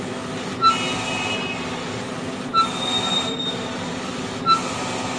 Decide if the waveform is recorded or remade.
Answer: recorded